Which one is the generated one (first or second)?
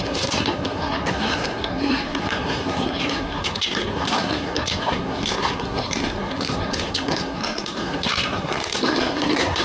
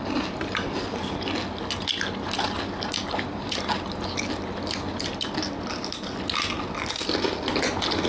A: first